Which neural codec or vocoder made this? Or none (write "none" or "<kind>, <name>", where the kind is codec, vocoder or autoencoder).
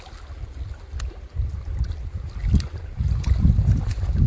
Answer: none